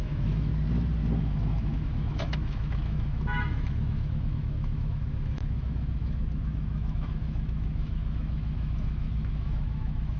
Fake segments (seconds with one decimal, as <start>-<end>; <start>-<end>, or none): 0.0-0.5; 1.2-10.2